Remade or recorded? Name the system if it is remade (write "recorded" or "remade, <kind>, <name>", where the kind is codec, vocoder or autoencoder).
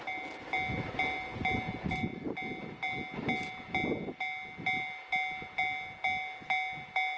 recorded